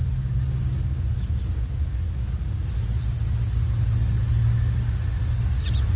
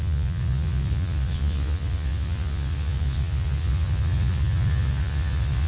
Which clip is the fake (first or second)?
second